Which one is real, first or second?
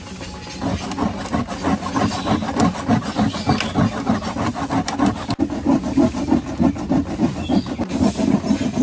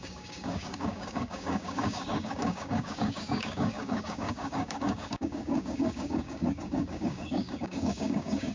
first